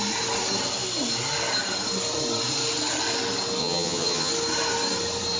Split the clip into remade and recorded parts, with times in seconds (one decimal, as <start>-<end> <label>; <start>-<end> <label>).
0.0-3.6 recorded; 3.6-4.3 remade; 4.3-5.4 recorded